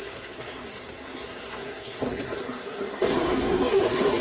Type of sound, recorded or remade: remade